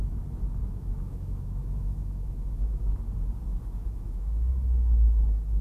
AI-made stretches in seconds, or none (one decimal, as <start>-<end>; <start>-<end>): 0.6-2.8; 3.5-4.5